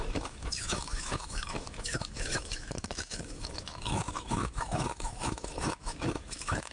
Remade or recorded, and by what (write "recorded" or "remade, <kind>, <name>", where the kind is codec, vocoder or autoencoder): remade, autoencoder, DAC-VAE